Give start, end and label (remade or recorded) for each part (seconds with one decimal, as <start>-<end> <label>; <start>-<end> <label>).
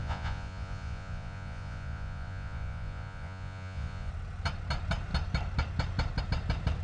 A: 0.0-4.1 remade; 4.1-6.8 recorded